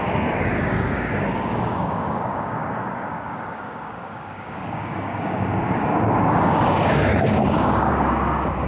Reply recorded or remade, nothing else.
remade